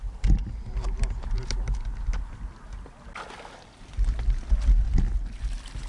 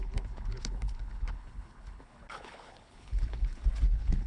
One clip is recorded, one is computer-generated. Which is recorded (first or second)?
first